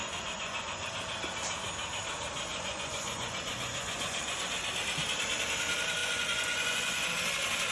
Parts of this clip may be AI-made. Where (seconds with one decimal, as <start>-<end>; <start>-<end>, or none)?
0.0-0.9; 2.5-4.5; 6.0-7.1